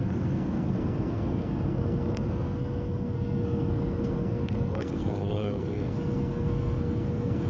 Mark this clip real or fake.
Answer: fake